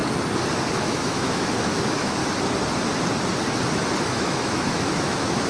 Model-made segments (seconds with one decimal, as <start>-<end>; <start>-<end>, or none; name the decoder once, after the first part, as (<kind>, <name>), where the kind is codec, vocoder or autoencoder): 0.7-2.2 (autoencoder, DAC-VAE); 4.0-5.5